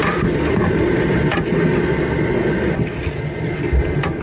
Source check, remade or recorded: recorded